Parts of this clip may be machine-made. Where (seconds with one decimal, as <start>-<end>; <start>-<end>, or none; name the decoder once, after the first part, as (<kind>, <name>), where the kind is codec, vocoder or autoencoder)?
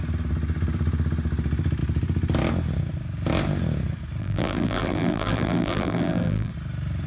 4.2-6.5 (vocoder, BigVGAN v2)